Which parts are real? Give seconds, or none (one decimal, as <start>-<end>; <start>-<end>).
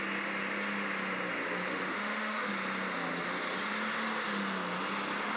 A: 0.0-1.7; 2.5-5.4